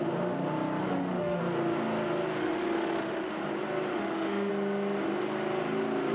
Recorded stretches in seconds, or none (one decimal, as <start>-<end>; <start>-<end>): 0.0-0.8; 1.4-2.4; 3.4-3.9; 4.5-6.1